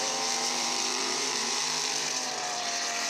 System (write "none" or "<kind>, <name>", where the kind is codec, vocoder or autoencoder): vocoder, BigVGAN v2